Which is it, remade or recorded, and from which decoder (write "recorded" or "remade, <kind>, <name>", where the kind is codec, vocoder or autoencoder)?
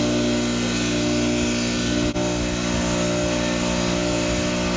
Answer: recorded